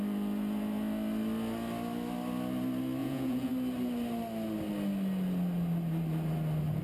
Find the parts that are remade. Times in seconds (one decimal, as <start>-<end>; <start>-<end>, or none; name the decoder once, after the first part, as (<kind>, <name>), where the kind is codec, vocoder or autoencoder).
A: 3.0-3.5 (vocoder, Vocos)

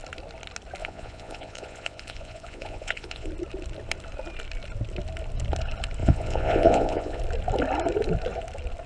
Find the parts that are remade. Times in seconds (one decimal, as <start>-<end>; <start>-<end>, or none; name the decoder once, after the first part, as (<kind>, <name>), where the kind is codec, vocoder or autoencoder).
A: 0.8-3.3 (vocoder, Vocos); 6.0-7.2

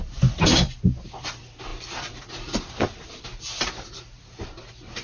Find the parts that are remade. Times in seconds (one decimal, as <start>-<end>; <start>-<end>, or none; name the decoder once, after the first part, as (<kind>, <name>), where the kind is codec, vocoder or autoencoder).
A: none